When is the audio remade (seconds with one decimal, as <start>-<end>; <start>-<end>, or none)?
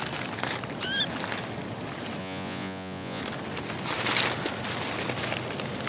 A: 2.2-3.2